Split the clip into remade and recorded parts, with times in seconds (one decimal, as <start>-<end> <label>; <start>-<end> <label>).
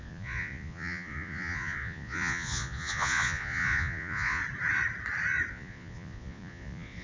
0.0-4.4 remade; 4.4-5.5 recorded; 5.5-7.0 remade